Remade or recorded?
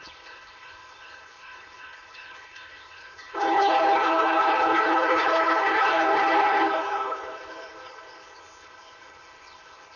remade